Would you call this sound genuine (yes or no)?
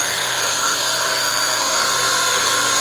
no